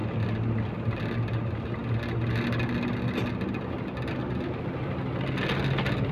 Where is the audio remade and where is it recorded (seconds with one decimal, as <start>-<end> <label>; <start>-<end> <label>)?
0.0-1.2 remade; 1.2-6.1 recorded